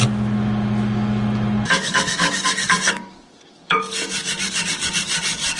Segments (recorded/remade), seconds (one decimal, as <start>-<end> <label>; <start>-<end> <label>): 0.0-1.8 recorded; 1.8-5.6 remade